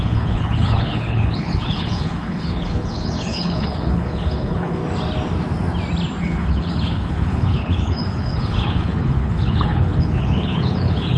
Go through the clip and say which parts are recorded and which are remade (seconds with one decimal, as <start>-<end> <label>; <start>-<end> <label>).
0.0-4.8 remade; 4.8-6.2 recorded; 6.2-11.2 remade